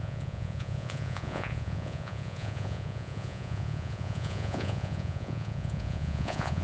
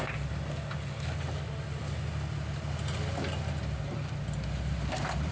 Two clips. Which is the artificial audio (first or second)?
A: first